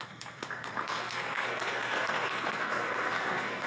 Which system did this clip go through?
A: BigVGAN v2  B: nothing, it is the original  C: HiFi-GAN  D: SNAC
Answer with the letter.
D